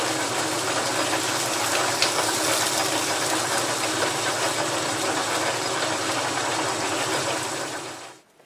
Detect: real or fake real